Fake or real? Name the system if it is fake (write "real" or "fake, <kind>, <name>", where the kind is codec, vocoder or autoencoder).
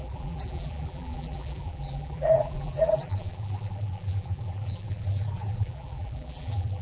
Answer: fake, vocoder, BigVGAN v2